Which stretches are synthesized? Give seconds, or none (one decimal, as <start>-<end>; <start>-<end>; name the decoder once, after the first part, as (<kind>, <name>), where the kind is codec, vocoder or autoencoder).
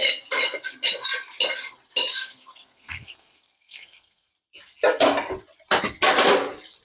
2.1-4.3 (codec, SNAC)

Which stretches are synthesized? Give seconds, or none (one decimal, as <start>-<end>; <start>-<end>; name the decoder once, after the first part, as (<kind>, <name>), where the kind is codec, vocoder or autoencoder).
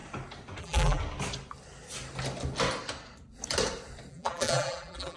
0.6-1.0 (vocoder, BigVGAN v2); 4.1-5.2